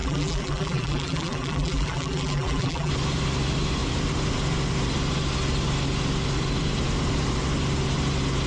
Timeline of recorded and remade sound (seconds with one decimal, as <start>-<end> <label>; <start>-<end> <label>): 0.0-2.9 remade; 2.9-8.5 recorded